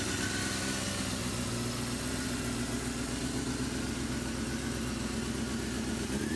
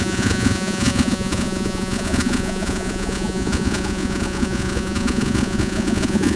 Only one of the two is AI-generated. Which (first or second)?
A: second